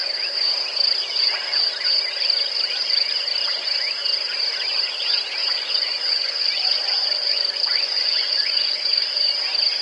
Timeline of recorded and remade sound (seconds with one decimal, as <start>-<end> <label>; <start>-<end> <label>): 0.0-5.4 recorded; 5.4-9.1 remade; 9.1-9.8 recorded